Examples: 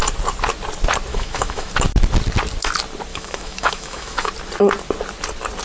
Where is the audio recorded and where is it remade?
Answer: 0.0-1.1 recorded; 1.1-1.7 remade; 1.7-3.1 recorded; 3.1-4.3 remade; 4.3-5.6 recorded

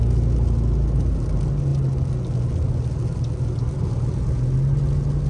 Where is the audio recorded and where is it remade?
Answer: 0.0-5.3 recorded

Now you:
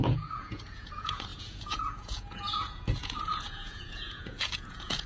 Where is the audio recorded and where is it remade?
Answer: 0.0-5.1 remade

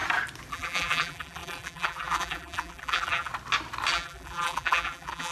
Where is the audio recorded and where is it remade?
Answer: 0.0-0.5 recorded; 0.5-3.3 remade; 3.3-3.9 recorded; 3.9-5.3 remade